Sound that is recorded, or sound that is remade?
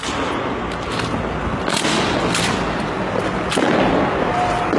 recorded